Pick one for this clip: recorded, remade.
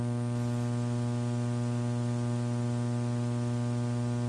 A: recorded